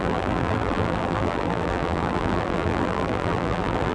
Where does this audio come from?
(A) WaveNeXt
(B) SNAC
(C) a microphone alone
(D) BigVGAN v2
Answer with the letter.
D